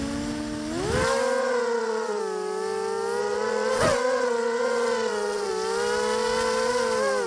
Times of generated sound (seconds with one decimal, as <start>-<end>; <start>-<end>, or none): 1.4-2.2; 3.2-5.5